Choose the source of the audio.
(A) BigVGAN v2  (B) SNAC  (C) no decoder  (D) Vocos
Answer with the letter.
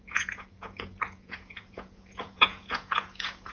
D